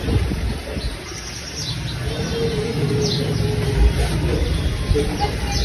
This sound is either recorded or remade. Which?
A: recorded